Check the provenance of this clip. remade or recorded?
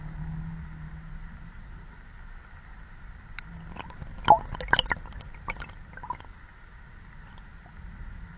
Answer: recorded